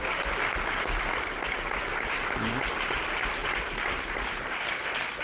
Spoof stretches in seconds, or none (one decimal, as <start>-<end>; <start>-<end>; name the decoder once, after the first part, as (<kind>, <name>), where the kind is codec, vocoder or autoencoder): 3.4-4.7 (vocoder, BigVGAN v2)